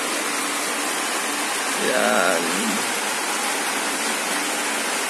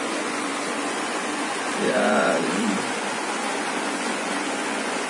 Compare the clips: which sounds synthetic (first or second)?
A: second